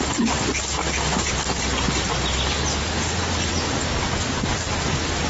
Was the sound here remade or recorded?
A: recorded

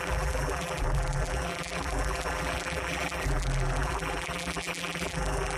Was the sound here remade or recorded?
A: remade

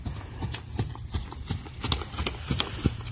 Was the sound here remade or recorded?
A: remade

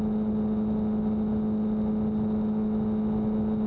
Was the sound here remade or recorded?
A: recorded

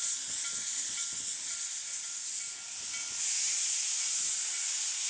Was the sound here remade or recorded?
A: recorded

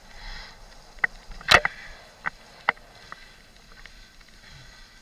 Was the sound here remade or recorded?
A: recorded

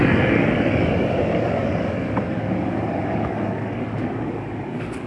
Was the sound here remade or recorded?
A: remade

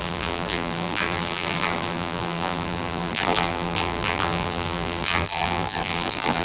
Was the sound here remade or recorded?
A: remade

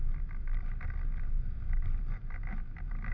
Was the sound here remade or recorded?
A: recorded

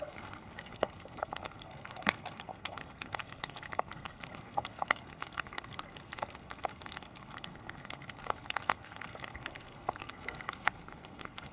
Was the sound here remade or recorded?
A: remade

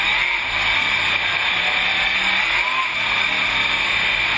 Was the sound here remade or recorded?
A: recorded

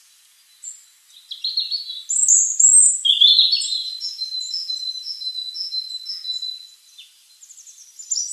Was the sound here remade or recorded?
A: recorded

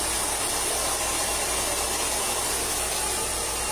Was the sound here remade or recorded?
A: recorded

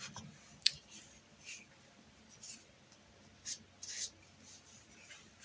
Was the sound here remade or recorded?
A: recorded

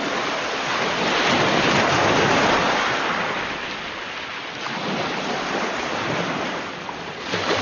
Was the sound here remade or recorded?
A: recorded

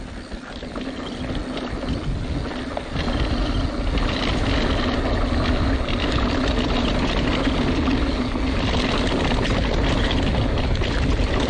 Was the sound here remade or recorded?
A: recorded